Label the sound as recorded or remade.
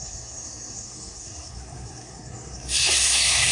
remade